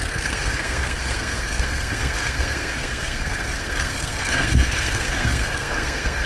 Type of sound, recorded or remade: remade